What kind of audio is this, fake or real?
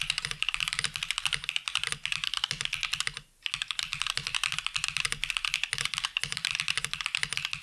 real